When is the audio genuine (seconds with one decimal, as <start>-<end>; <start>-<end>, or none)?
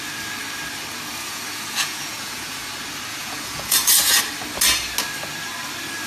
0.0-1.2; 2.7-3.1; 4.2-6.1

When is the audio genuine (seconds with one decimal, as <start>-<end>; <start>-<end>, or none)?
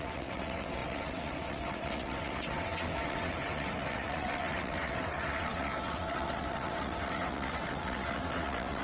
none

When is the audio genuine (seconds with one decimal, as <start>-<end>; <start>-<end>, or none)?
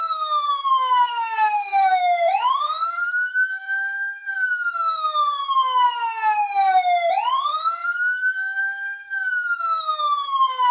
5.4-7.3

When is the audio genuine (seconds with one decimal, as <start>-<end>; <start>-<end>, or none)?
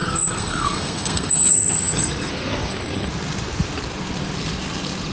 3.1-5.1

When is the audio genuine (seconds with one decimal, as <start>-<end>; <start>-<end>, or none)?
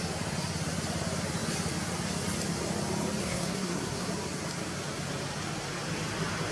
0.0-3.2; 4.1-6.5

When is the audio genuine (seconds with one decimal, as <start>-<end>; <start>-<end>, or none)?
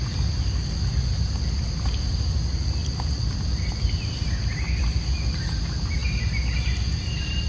0.0-7.5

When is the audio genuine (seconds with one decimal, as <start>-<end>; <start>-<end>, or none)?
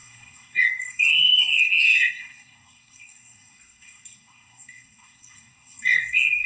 none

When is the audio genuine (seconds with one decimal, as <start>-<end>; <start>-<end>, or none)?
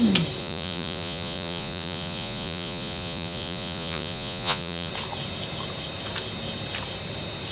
0.0-0.4; 4.9-7.5